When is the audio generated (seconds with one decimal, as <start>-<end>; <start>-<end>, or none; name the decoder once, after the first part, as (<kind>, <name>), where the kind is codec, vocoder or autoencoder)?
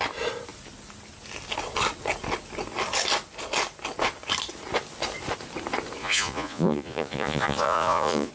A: 6.0-8.3 (vocoder, Vocos)